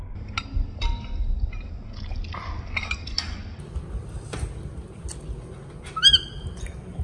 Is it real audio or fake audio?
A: real